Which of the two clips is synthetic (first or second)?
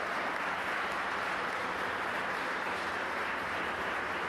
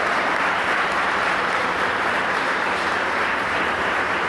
second